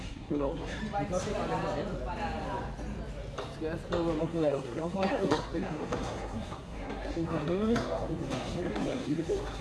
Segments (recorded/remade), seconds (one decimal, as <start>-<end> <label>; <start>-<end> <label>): 0.0-0.8 remade; 0.8-4.2 recorded; 4.2-9.6 remade

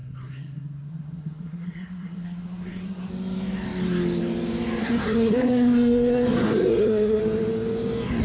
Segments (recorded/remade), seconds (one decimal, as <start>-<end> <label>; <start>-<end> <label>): 0.0-3.1 remade; 3.1-4.8 recorded; 4.8-7.2 remade; 7.2-8.2 recorded

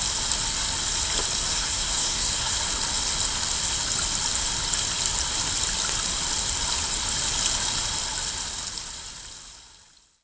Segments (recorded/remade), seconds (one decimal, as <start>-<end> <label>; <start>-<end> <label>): 0.0-1.5 recorded; 1.5-2.6 remade; 2.6-10.2 recorded

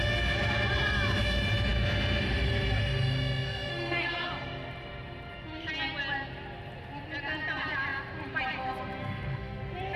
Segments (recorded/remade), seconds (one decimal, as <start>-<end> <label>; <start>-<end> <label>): 0.0-3.7 recorded; 3.7-4.3 remade; 4.3-9.0 recorded; 9.0-9.6 remade; 9.6-10.0 recorded

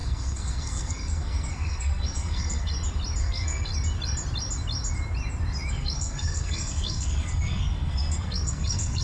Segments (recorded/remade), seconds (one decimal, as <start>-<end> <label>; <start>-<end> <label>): 0.0-2.7 remade; 2.7-3.2 recorded; 3.2-3.7 remade; 3.7-5.7 recorded; 5.7-9.0 remade

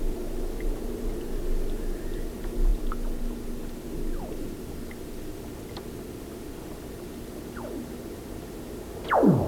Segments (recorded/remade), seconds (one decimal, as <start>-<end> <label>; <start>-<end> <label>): 0.0-9.5 recorded

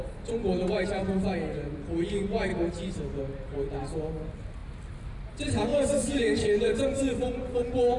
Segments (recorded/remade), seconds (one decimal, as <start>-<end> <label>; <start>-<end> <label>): 0.0-8.0 recorded